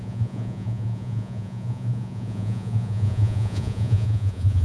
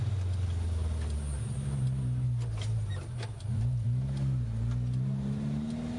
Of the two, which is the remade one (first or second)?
first